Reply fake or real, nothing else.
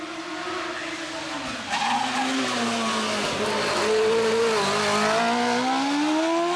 real